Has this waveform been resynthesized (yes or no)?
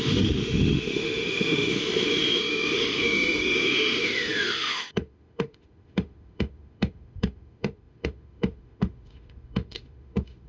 yes